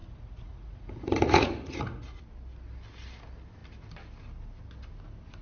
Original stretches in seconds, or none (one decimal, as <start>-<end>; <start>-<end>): 2.2-5.4